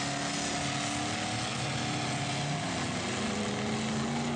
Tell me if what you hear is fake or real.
real